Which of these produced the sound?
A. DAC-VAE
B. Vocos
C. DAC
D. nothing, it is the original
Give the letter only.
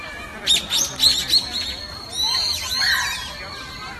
D